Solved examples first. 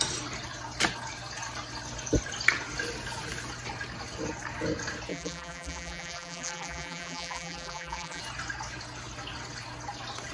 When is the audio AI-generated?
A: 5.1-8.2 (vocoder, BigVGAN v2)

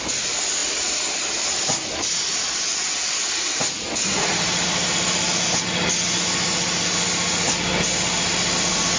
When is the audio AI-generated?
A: none